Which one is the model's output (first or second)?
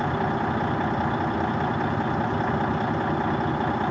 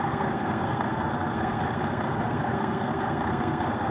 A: second